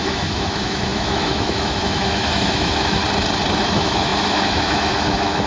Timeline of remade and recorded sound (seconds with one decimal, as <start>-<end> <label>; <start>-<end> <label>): 0.0-3.0 remade; 3.0-3.6 recorded; 3.6-5.5 remade